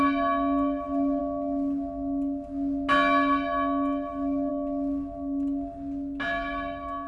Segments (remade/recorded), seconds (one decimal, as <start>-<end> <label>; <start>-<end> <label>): 0.0-7.1 recorded